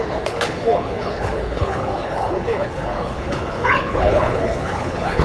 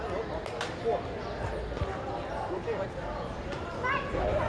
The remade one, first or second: first